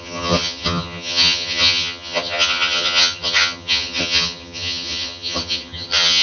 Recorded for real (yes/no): no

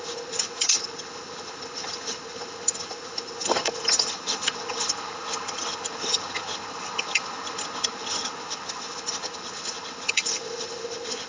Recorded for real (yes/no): no